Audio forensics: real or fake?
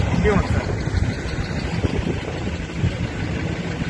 real